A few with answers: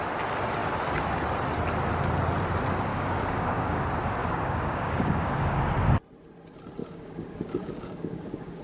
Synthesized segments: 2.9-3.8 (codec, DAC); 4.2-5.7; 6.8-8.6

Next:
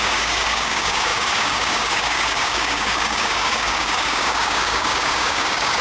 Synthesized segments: 0.0-5.8 (codec, DAC)

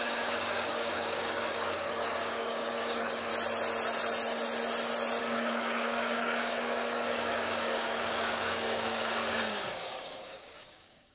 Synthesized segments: 0.0-3.3 (codec, DAC); 5.2-11.1

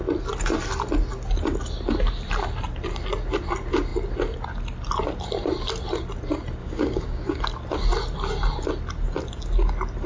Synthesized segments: 6.6-7.4 (codec, DAC)